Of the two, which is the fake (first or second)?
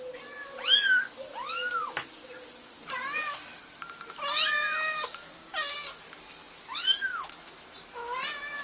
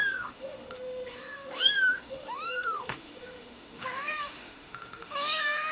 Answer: second